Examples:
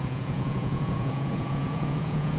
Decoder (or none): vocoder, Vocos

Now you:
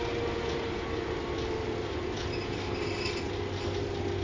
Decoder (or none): none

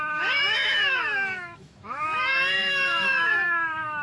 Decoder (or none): autoencoder, DAC-VAE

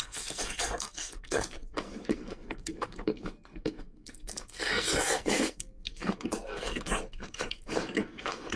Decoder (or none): codec, SNAC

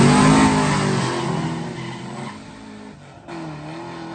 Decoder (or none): none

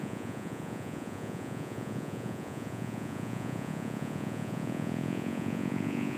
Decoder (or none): vocoder, Vocos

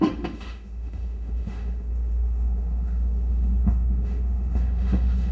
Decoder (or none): autoencoder, DAC-VAE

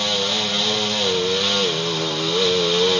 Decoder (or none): none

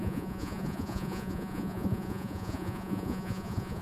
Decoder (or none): vocoder, Vocos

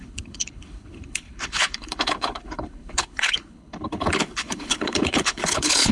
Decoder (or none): codec, HILCodec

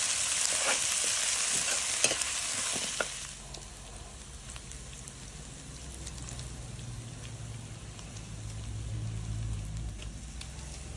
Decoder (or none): none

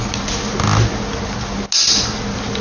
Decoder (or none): none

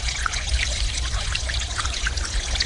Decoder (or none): vocoder, Vocos